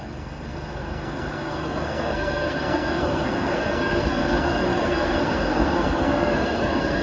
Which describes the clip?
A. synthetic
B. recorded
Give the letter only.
A